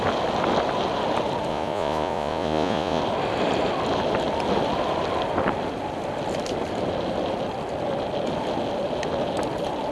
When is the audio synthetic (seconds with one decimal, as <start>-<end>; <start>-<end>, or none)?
1.5-3.0